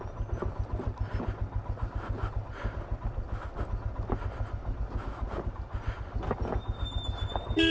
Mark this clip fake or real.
real